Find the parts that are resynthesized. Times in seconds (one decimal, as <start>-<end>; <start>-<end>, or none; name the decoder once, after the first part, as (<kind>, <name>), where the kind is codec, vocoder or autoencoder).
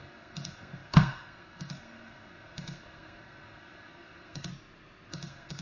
0.0-4.5 (codec, SNAC); 5.1-5.6